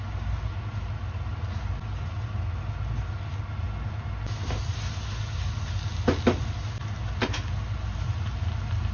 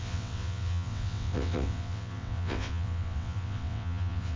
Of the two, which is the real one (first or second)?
first